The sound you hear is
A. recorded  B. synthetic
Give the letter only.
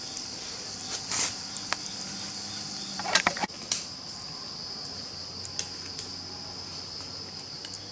A